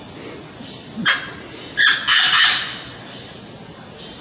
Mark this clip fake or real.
real